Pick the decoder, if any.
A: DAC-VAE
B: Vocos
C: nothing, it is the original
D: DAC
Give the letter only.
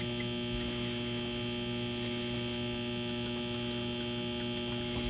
C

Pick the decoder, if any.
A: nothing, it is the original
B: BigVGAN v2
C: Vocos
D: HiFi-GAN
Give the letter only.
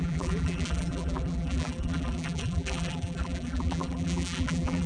B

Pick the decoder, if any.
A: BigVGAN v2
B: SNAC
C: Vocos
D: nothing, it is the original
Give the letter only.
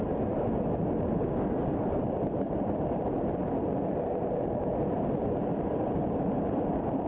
D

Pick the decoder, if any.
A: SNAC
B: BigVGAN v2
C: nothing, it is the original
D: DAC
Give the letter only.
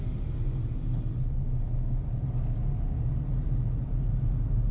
C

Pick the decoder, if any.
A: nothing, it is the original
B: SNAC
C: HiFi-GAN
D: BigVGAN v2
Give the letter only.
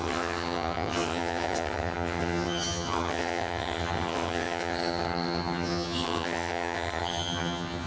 C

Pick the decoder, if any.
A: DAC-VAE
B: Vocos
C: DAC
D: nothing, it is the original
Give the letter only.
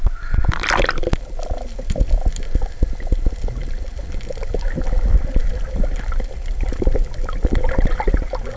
D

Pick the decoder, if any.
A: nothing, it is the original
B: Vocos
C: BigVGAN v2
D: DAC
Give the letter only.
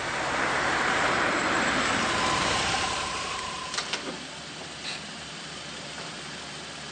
C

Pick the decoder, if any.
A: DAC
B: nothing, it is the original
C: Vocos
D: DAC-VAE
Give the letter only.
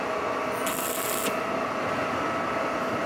B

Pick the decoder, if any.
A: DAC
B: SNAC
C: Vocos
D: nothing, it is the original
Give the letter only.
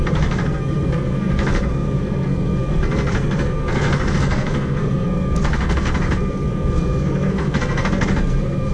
B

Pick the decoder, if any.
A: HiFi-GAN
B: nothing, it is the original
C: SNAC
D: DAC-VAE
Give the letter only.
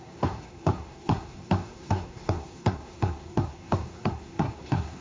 C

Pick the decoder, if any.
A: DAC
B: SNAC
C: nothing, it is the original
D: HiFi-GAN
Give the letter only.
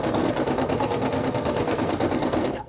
B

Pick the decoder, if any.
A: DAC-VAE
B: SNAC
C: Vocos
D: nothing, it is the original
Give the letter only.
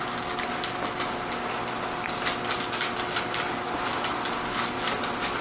D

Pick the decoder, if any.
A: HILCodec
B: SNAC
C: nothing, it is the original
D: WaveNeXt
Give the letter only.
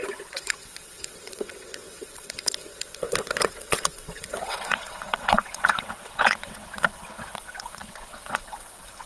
D